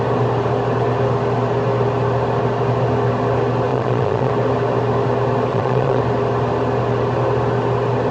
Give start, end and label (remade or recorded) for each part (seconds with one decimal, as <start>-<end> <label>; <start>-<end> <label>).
0.0-3.7 recorded; 3.7-4.3 remade; 4.3-5.5 recorded; 5.5-6.0 remade; 6.0-8.1 recorded